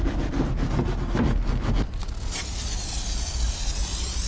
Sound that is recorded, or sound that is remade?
recorded